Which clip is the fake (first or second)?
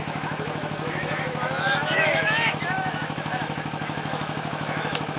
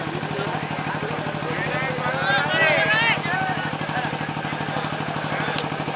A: first